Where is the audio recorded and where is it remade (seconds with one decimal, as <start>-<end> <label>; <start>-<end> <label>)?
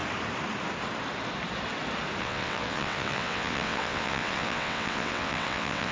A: 0.0-2.2 recorded; 2.2-5.9 remade